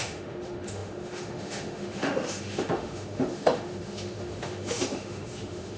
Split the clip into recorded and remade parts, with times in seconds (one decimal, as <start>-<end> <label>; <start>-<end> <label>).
0.0-5.8 remade